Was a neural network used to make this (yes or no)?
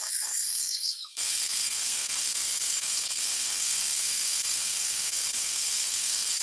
yes